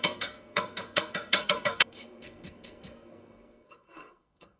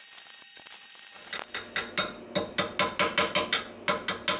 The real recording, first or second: second